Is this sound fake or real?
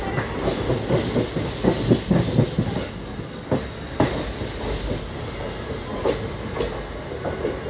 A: real